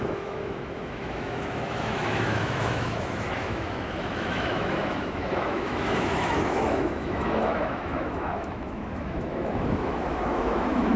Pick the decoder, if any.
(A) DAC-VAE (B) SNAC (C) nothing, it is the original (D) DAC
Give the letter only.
A